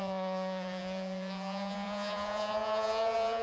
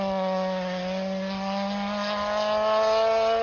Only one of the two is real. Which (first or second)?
second